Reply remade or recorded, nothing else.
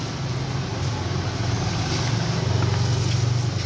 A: recorded